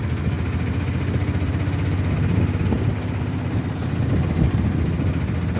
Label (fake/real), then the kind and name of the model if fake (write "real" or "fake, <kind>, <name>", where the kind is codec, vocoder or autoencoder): real